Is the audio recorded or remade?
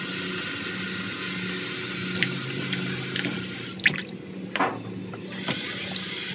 recorded